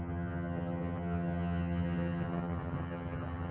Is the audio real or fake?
fake